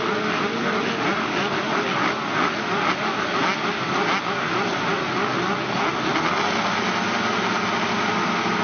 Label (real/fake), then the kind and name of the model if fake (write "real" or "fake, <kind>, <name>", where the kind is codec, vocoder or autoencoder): real